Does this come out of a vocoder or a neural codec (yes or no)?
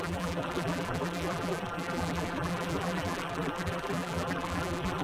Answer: yes